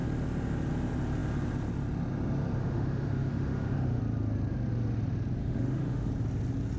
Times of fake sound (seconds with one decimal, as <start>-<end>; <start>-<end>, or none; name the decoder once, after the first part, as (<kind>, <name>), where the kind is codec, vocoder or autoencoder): 2.6-4.0 (autoencoder, DAC-VAE); 5.4-6.1